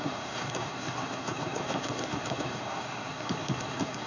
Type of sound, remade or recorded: remade